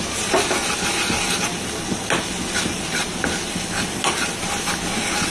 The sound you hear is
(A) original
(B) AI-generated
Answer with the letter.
A